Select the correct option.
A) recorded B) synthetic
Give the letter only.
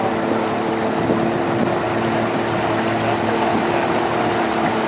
A